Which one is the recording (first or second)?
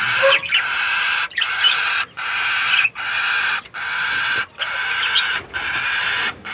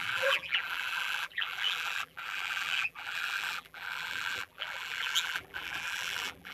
first